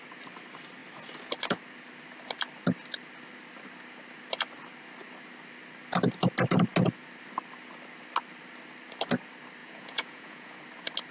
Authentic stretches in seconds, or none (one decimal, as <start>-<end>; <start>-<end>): 0.0-9.6; 10.6-11.1